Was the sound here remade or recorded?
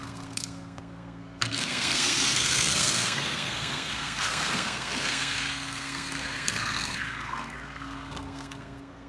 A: remade